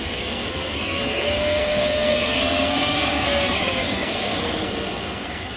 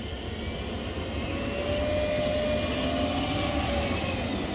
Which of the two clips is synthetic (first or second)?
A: first